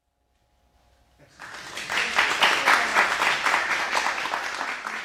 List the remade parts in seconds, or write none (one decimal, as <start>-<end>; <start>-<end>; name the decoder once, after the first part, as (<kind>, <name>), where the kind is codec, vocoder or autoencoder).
none